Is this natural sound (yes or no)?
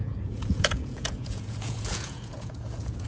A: no